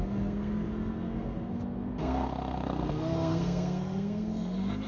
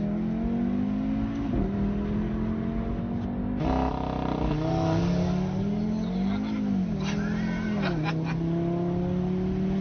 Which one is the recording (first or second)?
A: second